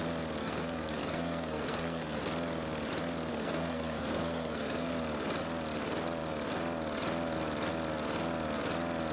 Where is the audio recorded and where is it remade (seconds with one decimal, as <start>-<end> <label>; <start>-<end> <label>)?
0.0-0.4 recorded; 0.4-2.2 remade; 2.2-3.3 recorded; 3.3-4.9 remade; 4.9-9.1 recorded

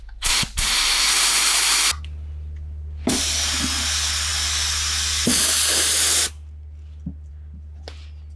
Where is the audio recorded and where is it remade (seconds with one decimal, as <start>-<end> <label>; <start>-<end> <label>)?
0.0-8.4 recorded

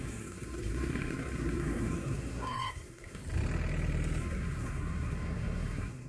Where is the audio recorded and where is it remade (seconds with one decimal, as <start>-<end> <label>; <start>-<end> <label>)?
0.0-3.2 remade; 3.2-4.2 recorded; 4.2-6.1 remade

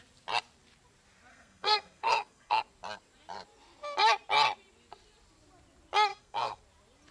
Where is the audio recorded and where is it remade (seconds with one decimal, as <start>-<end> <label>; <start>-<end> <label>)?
0.0-1.3 recorded; 1.3-2.6 remade; 2.6-6.1 recorded; 6.1-6.6 remade; 6.6-7.1 recorded

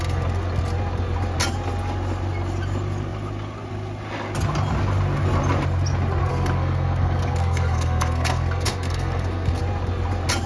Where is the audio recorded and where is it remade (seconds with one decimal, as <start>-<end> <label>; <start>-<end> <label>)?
0.0-6.3 recorded; 6.3-9.6 remade; 9.6-10.5 recorded

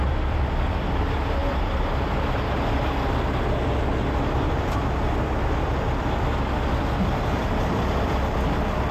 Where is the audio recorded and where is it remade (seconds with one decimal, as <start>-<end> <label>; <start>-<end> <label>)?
0.0-8.9 recorded